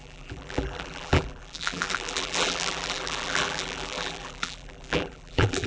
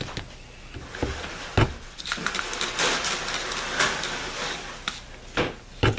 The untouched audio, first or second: second